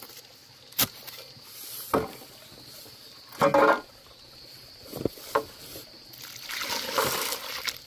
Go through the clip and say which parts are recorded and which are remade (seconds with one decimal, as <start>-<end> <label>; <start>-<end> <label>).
0.0-7.9 recorded